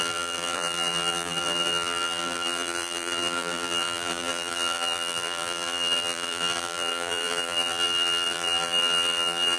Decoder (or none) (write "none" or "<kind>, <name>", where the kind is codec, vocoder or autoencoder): vocoder, BigVGAN v2